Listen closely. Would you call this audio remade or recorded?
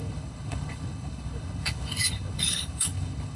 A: remade